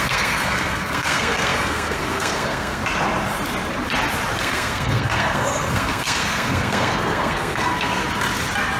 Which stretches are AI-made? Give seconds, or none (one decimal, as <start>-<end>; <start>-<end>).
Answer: 0.0-2.8; 4.4-8.0